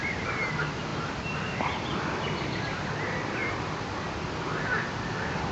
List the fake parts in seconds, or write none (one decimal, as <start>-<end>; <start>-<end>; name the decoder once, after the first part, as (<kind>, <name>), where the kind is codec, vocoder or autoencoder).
none